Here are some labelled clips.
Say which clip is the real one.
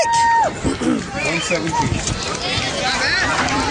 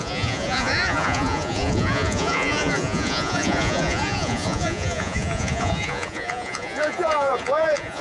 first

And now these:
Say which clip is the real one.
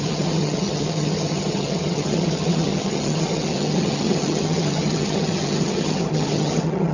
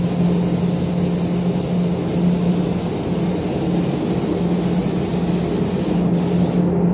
second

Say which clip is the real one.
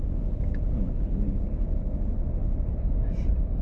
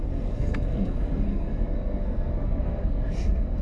first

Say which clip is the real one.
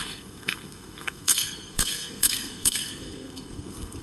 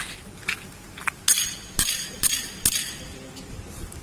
second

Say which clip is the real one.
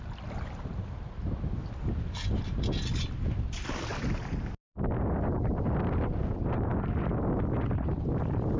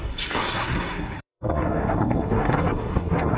first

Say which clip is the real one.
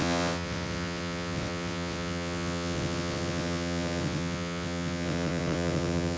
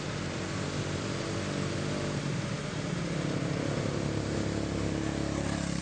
second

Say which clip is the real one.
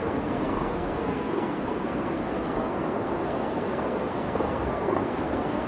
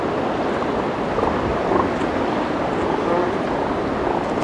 second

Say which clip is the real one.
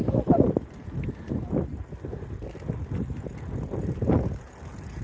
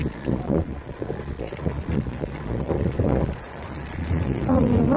first